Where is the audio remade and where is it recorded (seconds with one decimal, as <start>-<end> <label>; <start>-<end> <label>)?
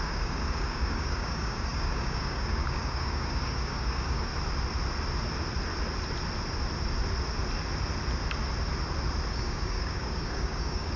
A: 0.0-4.3 remade; 4.3-9.3 recorded; 9.3-11.0 remade